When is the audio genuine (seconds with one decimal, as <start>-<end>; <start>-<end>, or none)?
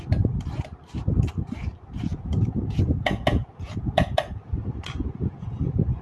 0.0-2.1